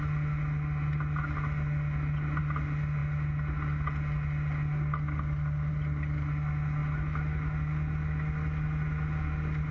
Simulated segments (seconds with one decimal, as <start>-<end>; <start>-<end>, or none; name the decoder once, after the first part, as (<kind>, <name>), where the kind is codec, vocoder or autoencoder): none